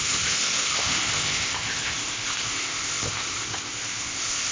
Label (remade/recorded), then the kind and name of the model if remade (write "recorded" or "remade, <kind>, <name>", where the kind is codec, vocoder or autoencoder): remade, codec, ZipCodec